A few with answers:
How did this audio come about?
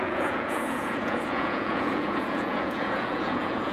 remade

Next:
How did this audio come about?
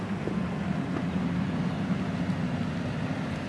recorded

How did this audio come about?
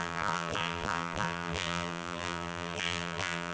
remade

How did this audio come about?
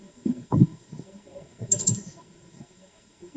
remade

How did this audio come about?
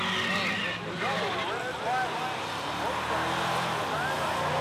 recorded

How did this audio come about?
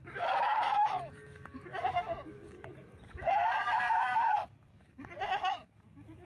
remade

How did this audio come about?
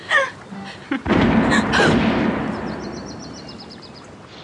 recorded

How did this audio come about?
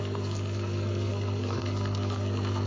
remade